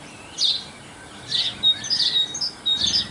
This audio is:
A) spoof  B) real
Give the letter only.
B